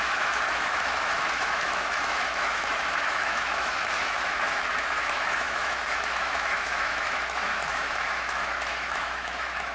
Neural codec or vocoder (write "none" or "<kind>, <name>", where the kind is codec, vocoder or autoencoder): autoencoder, DAC-VAE